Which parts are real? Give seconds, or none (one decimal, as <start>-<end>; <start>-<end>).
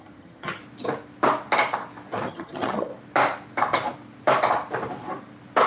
0.6-2.3; 2.9-5.7